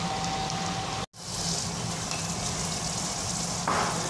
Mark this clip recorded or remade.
recorded